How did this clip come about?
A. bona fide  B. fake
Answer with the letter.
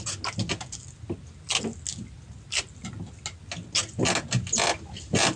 A